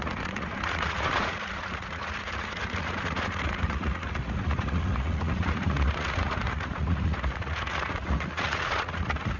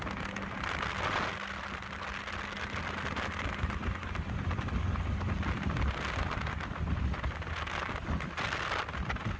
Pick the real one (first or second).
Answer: second